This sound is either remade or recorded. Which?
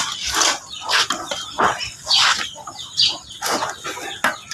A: recorded